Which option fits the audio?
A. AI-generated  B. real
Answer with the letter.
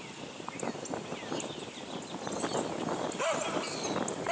B